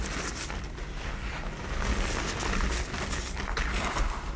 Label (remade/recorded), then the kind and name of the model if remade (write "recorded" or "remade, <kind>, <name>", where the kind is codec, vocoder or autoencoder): recorded